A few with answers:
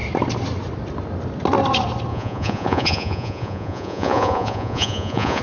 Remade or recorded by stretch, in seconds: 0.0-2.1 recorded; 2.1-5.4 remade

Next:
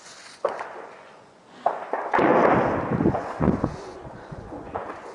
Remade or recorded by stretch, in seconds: 0.0-2.3 remade; 2.3-3.0 recorded; 3.0-5.1 remade

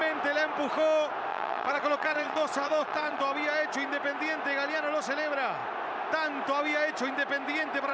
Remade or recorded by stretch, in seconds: 0.0-1.3 recorded; 1.3-3.2 remade; 3.2-7.9 recorded

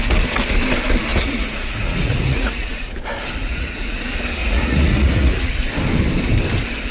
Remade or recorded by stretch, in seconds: 0.0-1.1 recorded; 1.1-2.9 remade; 2.9-3.4 recorded; 3.4-4.0 remade; 4.0-4.4 recorded; 4.4-5.5 remade; 5.5-6.9 recorded